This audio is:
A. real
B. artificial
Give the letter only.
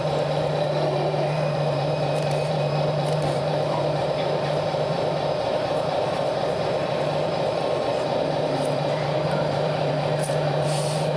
B